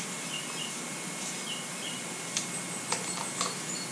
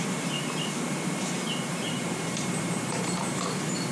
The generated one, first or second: second